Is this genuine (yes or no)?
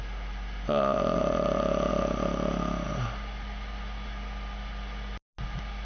yes